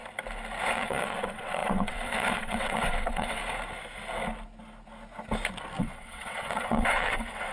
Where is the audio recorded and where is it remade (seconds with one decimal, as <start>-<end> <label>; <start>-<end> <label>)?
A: 0.0-0.7 recorded; 0.7-3.4 remade; 3.4-5.8 recorded; 5.8-7.5 remade